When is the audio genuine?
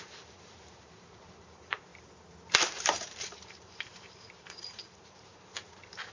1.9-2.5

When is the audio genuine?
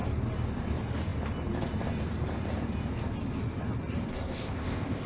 0.0-4.1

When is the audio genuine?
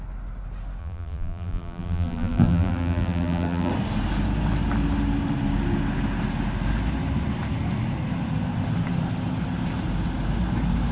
0.0-0.8; 3.7-10.9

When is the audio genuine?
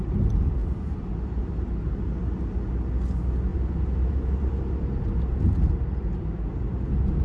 0.0-3.5; 4.5-7.2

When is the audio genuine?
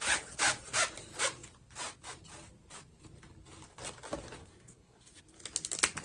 0.0-4.4; 5.2-6.0